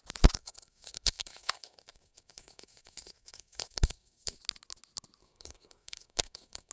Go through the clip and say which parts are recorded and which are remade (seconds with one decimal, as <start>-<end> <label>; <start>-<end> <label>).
0.0-0.4 recorded; 0.4-4.4 remade; 4.4-5.2 recorded; 5.2-6.7 remade